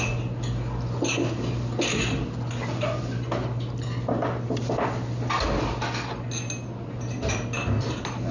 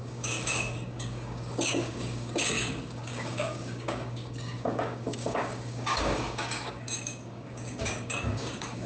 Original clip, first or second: first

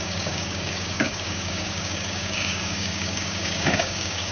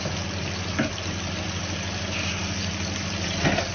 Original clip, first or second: second